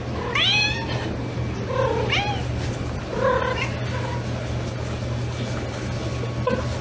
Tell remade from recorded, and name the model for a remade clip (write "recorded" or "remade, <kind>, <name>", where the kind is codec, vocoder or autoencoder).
recorded